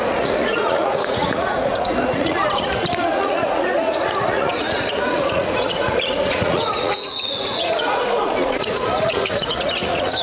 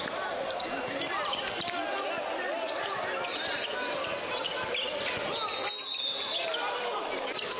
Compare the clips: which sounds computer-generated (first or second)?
first